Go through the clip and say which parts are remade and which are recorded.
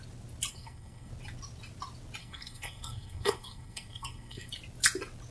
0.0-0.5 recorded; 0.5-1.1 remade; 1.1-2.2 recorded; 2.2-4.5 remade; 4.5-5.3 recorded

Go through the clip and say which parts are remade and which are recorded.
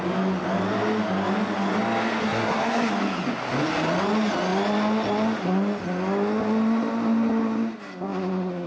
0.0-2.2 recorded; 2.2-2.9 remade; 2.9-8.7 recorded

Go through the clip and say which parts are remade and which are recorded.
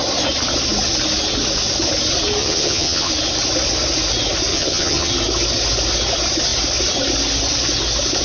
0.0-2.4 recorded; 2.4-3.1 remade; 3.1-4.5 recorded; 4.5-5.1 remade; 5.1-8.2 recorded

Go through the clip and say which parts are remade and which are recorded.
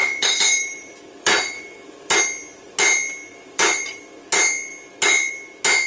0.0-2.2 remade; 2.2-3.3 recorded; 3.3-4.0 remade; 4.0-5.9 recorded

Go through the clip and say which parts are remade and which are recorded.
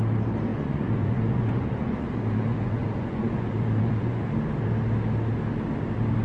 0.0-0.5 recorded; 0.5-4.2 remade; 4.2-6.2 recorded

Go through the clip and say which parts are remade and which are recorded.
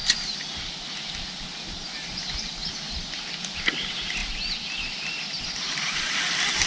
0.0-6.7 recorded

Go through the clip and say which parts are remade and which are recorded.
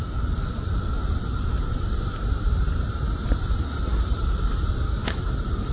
0.0-1.2 recorded; 1.2-4.6 remade; 4.6-5.7 recorded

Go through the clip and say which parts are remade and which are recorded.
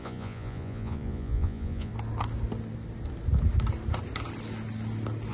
0.0-1.9 remade; 1.9-5.3 recorded